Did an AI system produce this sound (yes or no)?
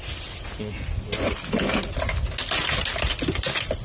no